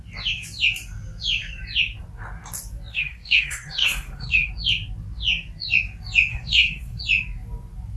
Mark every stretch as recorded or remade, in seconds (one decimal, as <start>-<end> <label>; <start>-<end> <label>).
0.0-2.9 recorded; 2.9-4.5 remade; 4.5-6.3 recorded; 6.3-7.0 remade; 7.0-8.0 recorded